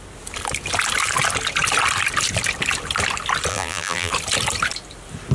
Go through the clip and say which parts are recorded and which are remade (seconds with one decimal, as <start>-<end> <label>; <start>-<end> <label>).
0.0-3.5 recorded; 3.5-4.1 remade; 4.1-5.3 recorded